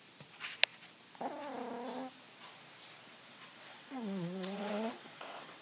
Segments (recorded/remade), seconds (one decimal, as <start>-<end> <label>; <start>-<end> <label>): 0.0-3.1 recorded; 3.1-5.6 remade